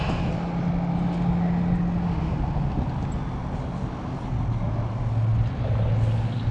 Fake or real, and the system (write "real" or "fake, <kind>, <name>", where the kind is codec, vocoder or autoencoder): real